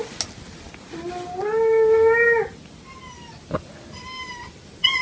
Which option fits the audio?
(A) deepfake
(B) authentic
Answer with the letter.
B